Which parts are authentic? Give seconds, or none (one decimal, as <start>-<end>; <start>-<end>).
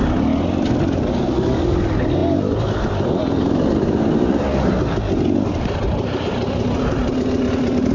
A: 0.0-7.9